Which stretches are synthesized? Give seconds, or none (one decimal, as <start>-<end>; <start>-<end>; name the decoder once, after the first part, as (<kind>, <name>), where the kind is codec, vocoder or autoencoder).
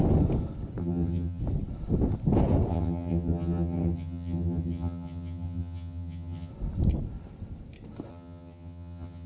0.8-1.4 (vocoder, HiFi-GAN); 2.7-6.5; 8.1-9.3